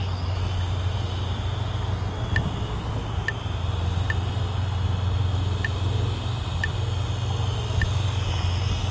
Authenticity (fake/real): real